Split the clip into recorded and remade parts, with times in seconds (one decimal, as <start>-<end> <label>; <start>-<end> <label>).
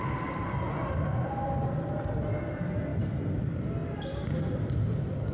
0.0-5.3 recorded